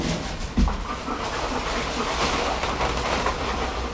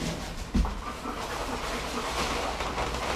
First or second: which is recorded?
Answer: second